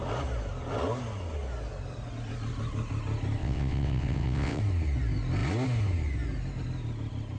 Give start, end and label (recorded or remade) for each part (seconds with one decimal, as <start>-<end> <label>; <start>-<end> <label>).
0.0-3.4 recorded; 3.4-4.6 remade; 4.6-7.4 recorded